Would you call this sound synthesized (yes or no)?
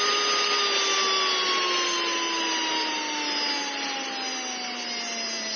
no